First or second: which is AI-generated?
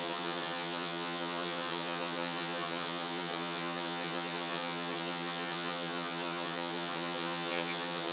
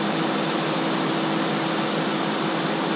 first